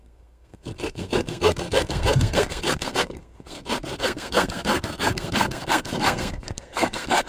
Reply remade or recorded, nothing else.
remade